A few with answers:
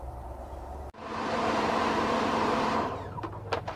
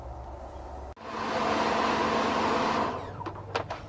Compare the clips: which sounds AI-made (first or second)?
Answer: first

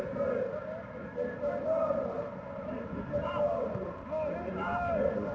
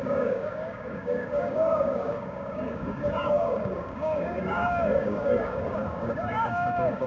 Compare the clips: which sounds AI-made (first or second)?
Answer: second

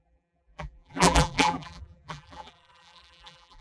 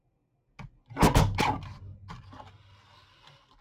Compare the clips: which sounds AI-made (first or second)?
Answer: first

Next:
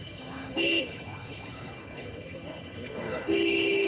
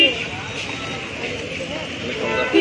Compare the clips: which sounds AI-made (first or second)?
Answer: first